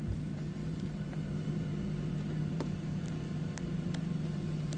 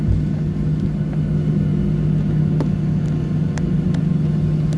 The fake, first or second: first